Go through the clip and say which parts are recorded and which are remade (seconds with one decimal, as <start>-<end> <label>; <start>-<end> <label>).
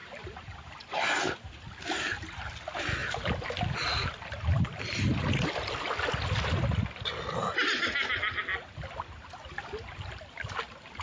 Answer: 0.0-1.6 remade; 1.6-3.0 recorded; 3.0-6.2 remade; 6.2-11.0 recorded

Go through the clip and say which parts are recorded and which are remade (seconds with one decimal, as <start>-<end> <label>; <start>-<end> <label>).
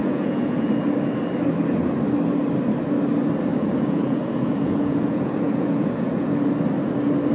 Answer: 0.0-0.7 remade; 0.7-3.5 recorded; 3.5-6.5 remade; 6.5-7.3 recorded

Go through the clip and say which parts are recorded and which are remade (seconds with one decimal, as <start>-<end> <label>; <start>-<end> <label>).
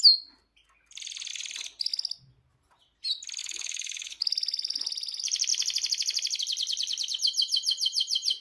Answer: 0.0-3.4 recorded; 3.4-4.2 remade; 4.2-8.4 recorded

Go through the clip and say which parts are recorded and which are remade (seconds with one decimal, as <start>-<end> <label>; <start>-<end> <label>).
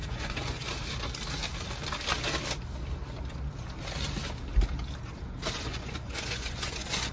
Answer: 0.0-0.7 remade; 0.7-5.7 recorded; 5.7-7.1 remade